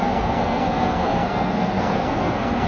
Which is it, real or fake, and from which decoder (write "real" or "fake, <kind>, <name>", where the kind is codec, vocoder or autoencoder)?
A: fake, codec, SNAC